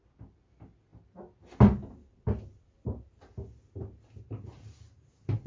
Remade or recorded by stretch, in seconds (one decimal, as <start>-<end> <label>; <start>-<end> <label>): 0.0-5.5 recorded